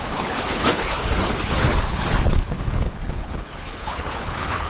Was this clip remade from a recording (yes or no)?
yes